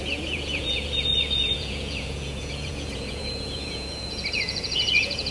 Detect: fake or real fake